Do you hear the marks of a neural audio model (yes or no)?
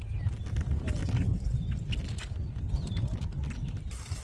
no